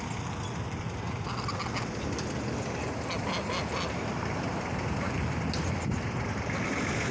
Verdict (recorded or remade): recorded